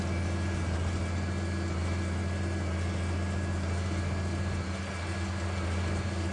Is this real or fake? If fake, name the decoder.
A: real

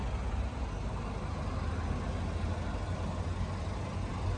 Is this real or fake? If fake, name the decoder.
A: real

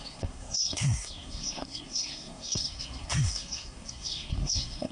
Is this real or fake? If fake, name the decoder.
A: fake, codec, SNAC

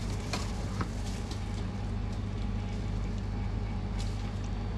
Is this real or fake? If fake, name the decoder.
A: real